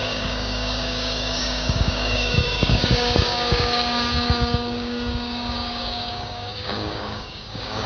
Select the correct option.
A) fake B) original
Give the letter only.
A